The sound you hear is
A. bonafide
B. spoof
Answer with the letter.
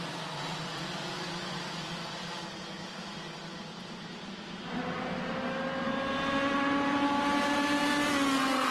A